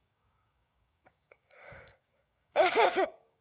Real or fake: fake